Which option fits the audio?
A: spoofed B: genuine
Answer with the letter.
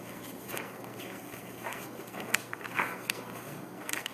A